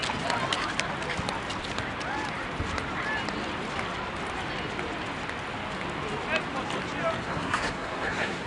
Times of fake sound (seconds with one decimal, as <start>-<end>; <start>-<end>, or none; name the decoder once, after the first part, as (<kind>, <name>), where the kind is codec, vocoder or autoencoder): 7.3-8.5 (codec, SNAC)